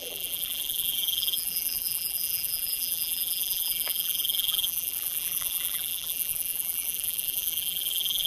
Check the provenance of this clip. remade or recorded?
remade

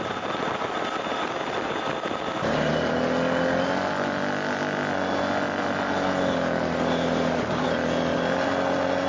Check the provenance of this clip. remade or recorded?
recorded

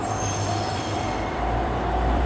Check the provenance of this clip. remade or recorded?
remade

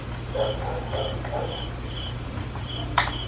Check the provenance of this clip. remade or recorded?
recorded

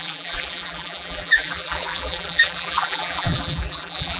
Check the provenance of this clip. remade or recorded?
remade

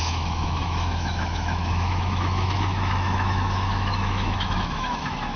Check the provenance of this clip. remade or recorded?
remade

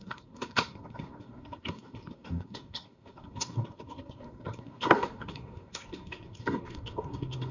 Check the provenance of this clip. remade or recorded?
remade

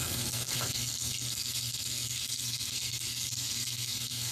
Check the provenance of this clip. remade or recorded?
remade